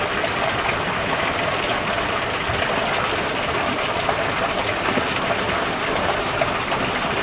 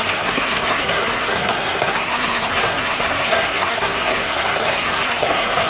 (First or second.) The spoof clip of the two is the second